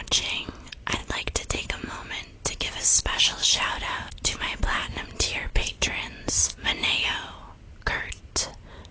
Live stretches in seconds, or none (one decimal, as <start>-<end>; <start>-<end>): 0.0-1.0; 2.2-4.8; 7.1-8.9